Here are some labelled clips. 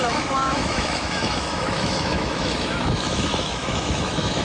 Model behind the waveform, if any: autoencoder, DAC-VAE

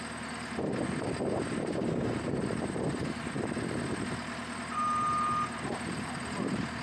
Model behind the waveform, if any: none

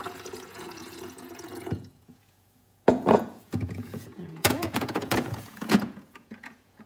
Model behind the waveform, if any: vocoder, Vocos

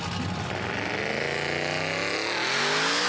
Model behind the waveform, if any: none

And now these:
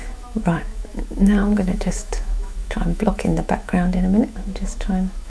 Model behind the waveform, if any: autoencoder, DAC-VAE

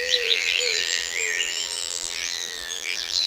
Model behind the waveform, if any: vocoder, BigVGAN v2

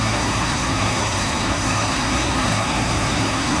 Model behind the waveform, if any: codec, SNAC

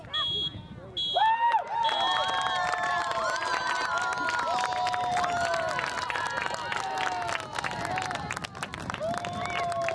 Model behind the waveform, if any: none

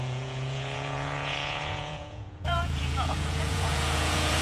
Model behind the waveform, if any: vocoder, Vocos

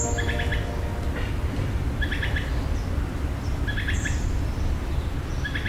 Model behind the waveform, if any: none